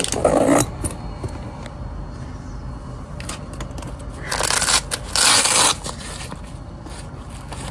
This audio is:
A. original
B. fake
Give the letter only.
A